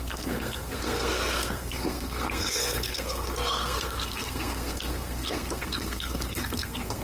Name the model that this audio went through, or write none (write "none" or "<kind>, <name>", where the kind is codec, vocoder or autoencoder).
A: codec, SNAC